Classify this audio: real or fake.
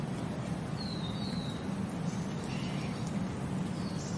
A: real